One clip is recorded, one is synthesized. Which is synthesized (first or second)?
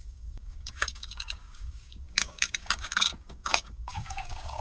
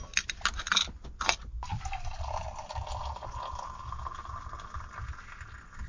first